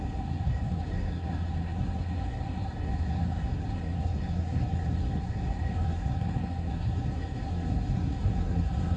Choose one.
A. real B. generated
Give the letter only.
B